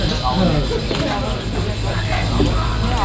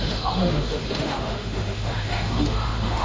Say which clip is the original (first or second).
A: first